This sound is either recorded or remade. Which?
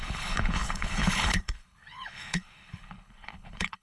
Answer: remade